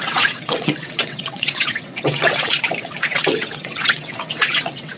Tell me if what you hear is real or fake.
fake